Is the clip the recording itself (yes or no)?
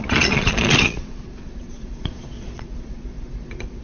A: no